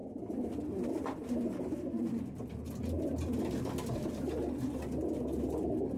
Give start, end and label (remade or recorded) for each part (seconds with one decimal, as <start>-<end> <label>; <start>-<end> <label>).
0.0-6.0 recorded